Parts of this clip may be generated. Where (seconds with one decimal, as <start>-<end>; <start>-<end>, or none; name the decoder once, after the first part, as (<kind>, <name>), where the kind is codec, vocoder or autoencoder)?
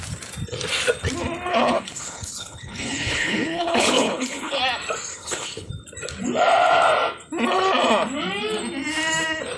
1.5-4.6 (codec, HILCodec); 5.1-5.7